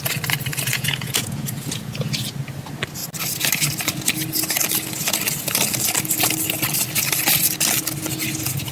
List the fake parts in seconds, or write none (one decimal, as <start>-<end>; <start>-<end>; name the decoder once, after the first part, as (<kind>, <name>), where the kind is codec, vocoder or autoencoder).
0.5-2.2 (vocoder, Vocos)